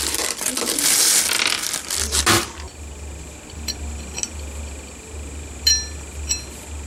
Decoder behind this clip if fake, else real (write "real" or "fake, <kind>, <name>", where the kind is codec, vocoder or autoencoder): real